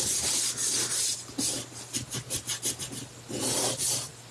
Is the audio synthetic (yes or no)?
no